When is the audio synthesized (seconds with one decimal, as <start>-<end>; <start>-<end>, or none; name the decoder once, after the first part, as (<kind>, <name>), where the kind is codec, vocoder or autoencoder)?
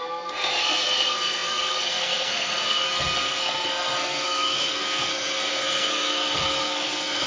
0.0-7.3 (codec, SNAC)